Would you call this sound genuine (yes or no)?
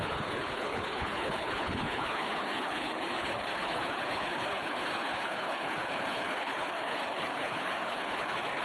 no